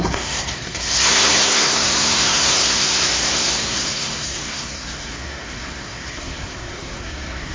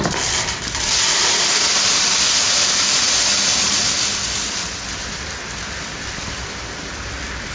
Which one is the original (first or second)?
second